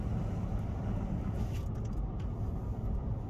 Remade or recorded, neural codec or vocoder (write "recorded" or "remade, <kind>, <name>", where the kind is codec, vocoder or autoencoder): recorded